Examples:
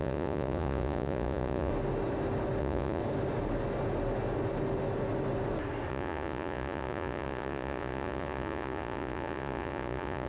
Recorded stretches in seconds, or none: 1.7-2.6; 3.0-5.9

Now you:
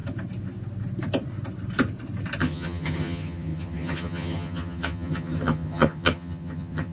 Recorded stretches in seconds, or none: 0.0-2.4

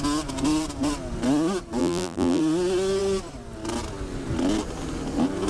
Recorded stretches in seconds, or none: 0.0-1.8; 2.4-5.5

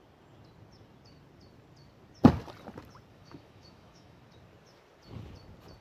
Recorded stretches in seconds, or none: 0.0-3.1; 4.2-5.8

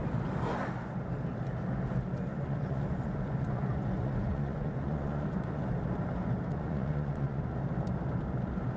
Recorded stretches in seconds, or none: 0.0-2.3; 5.6-6.5; 7.4-8.8

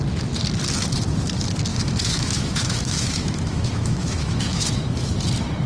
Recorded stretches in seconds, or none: 0.0-1.7; 5.1-5.7

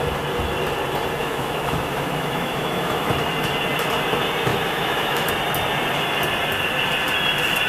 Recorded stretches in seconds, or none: 0.0-1.2; 3.1-4.5; 5.3-7.7